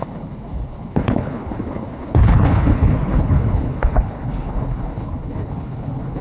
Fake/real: fake